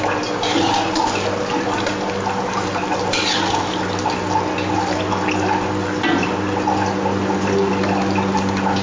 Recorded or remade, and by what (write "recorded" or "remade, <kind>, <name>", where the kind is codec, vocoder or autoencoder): recorded